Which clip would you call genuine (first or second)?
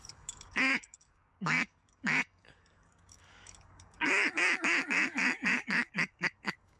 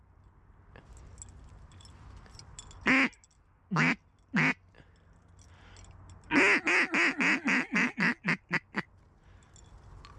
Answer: second